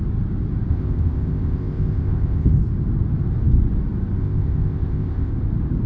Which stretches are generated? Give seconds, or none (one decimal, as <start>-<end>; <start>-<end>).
0.7-2.6; 4.2-5.3